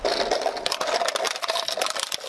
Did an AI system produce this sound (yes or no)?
no